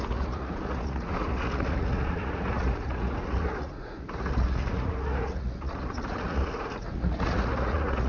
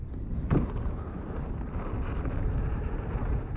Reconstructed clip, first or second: first